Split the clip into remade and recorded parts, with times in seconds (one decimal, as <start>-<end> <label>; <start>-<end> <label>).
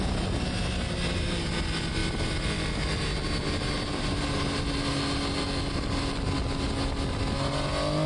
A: 0.0-8.1 recorded